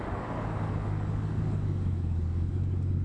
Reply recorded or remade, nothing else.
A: remade